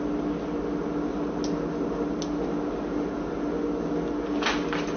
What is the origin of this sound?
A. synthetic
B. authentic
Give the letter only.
B